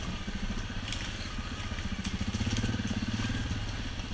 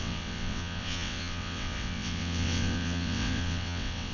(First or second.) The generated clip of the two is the second